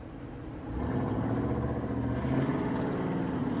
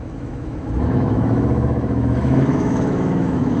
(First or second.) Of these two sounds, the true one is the first